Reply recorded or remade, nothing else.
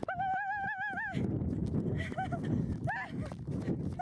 recorded